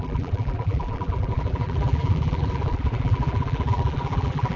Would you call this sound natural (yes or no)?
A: no